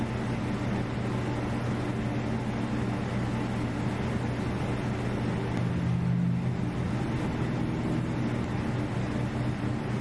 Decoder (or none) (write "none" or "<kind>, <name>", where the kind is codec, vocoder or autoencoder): none